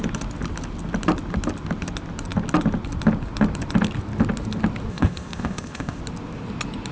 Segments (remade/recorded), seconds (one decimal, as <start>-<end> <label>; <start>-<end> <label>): 0.0-4.9 recorded; 4.9-6.0 remade; 6.0-6.9 recorded